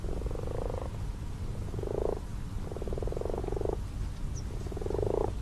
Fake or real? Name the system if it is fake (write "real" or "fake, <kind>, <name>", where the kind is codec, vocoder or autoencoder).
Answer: real